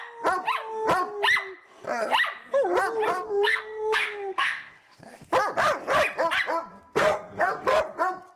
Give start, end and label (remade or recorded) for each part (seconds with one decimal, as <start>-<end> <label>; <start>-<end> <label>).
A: 0.0-3.1 recorded; 3.1-5.3 remade; 5.3-6.7 recorded; 6.7-7.8 remade; 7.8-8.4 recorded